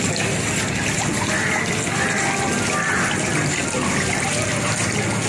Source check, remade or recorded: recorded